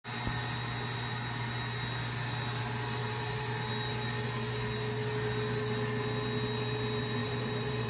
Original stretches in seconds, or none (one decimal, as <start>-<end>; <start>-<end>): 0.0-3.0; 3.7-7.2